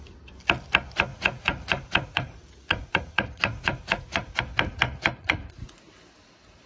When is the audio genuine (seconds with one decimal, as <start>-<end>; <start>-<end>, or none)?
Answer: 0.0-1.1; 4.4-5.2; 5.9-6.7